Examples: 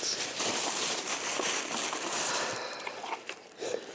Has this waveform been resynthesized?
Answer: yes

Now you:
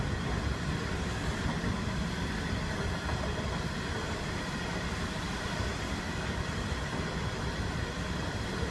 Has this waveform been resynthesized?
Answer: no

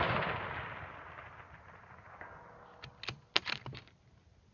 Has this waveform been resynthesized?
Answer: no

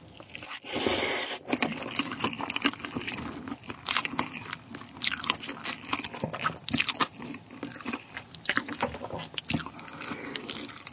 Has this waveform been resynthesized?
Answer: yes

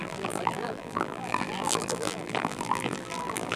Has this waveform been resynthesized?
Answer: yes